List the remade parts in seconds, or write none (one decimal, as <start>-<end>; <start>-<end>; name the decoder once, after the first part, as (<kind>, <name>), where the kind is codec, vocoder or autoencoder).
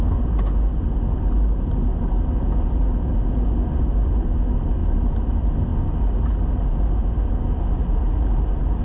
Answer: 4.8-5.3 (vocoder, BigVGAN v2); 5.7-6.4